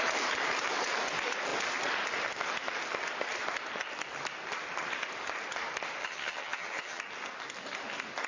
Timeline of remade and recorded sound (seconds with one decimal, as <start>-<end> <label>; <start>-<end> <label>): 0.0-6.0 recorded; 6.0-7.0 remade; 7.0-8.3 recorded